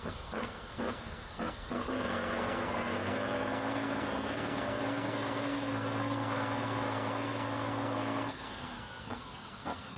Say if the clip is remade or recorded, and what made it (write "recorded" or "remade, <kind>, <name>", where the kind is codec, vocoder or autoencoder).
remade, codec, SNAC